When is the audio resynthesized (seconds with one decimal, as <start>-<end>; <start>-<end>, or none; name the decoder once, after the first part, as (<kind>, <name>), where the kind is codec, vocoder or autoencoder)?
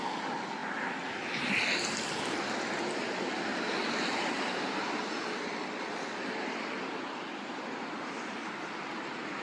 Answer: 0.0-0.6 (vocoder, BigVGAN v2); 2.2-9.4